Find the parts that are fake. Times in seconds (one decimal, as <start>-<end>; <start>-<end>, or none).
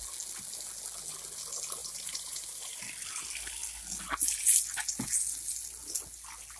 1.8-2.8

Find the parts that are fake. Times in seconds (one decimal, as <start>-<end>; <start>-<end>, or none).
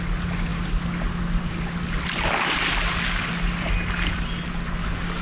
none